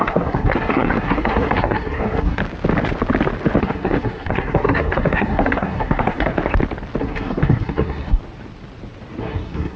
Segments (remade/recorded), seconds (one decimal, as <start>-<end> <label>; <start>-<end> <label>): 0.0-2.4 remade; 2.4-3.6 recorded; 3.6-6.3 remade; 6.3-7.0 recorded; 7.0-8.2 remade; 8.2-9.2 recorded; 9.2-9.8 remade